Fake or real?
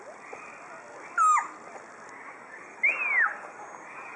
real